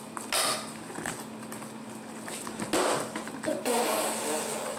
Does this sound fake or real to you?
real